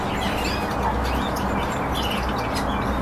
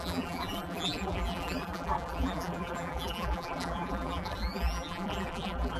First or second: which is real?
first